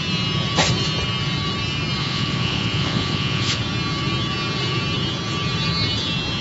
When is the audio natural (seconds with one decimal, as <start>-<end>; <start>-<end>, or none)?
0.0-2.0; 3.6-6.4

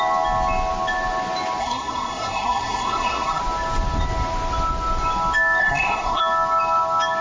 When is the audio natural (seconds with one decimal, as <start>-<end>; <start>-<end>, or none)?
0.0-1.6; 3.4-5.6; 6.2-7.2

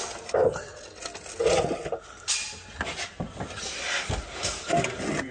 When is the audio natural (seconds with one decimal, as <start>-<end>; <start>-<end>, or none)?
0.0-5.3

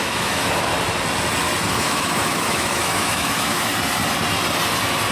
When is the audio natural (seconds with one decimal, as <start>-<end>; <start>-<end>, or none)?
0.7-1.7; 3.7-5.1